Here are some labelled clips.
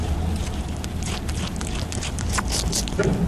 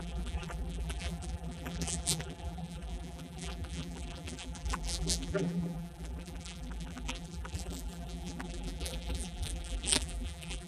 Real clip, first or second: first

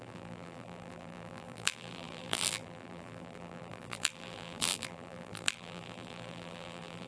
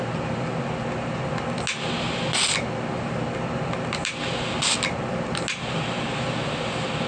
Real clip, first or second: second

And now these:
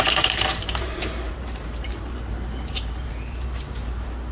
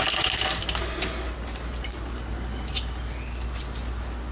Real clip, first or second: second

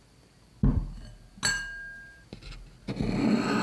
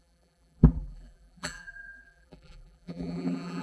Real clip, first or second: first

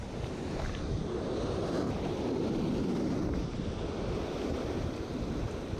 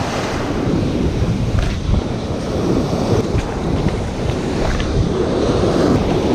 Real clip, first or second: first